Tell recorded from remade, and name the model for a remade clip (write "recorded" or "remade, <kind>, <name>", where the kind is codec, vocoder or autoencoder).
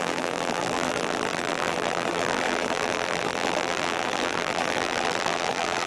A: remade, vocoder, BigVGAN v2